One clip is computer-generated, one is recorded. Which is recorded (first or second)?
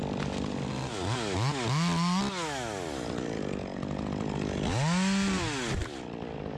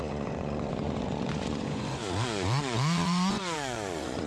first